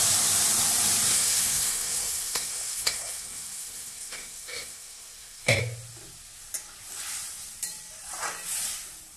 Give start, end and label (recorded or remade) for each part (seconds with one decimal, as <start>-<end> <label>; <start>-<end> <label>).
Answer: 0.0-1.1 recorded; 1.1-5.6 remade; 5.6-9.2 recorded